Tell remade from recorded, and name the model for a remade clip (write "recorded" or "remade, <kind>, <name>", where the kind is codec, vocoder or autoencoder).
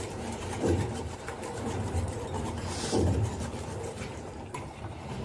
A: remade, vocoder, BigVGAN v2